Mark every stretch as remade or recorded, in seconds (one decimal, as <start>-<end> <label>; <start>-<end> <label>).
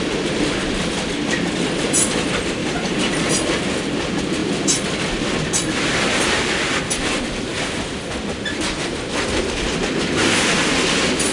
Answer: 0.0-2.6 recorded; 2.6-3.3 remade; 3.3-11.3 recorded